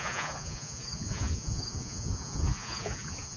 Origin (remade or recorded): remade